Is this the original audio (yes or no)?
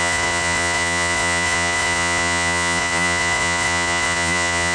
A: no